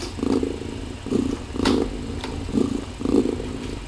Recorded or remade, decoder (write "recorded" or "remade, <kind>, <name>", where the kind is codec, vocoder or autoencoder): recorded